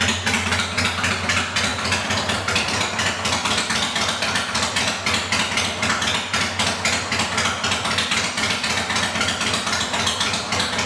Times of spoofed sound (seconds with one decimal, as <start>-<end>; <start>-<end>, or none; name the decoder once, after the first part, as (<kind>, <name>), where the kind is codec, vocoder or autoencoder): none